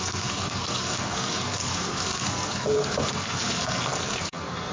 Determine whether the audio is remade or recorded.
remade